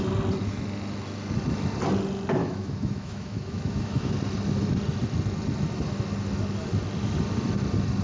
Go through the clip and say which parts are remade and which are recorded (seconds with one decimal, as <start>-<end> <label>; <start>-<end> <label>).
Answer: 0.0-2.4 recorded; 2.4-4.1 remade; 4.1-8.0 recorded